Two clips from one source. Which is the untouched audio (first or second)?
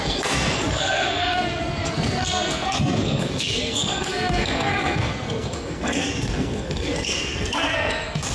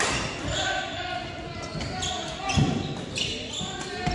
second